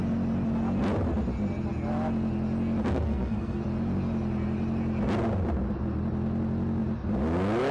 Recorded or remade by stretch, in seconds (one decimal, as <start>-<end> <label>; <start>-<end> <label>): 0.0-2.9 recorded; 2.9-3.6 remade; 3.6-7.7 recorded